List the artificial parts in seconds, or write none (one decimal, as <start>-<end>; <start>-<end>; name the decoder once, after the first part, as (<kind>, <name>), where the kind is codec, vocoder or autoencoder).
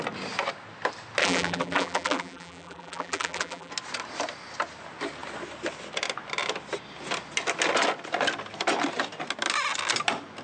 1.2-3.7 (vocoder, BigVGAN v2)